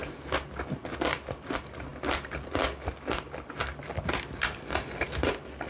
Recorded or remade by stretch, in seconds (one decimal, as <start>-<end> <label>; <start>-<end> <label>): 0.0-5.7 recorded